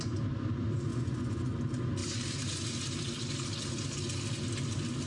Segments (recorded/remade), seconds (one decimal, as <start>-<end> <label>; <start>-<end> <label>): 0.0-0.9 recorded; 0.9-1.6 remade; 1.6-5.1 recorded